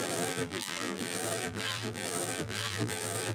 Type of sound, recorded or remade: remade